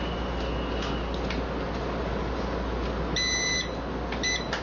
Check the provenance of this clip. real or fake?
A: real